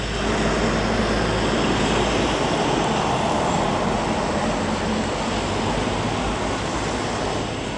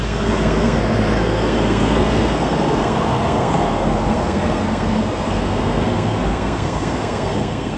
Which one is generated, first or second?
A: second